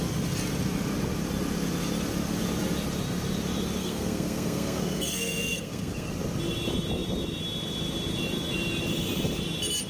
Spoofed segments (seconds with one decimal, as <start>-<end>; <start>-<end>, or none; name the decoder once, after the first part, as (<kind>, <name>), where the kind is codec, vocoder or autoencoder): 3.8-6.1 (codec, SNAC)